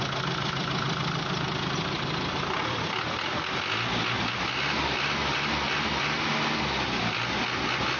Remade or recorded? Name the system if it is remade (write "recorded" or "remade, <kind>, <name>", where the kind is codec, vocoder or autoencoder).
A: recorded